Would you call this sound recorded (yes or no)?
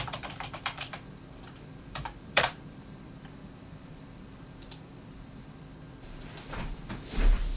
no